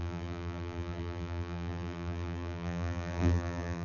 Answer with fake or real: fake